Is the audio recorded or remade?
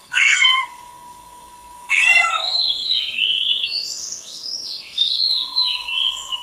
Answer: remade